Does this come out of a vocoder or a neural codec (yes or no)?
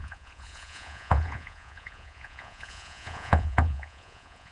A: yes